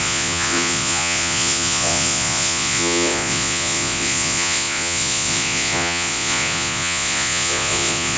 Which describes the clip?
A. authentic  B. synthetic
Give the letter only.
B